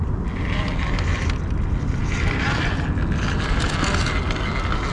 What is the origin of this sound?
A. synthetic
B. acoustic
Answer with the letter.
B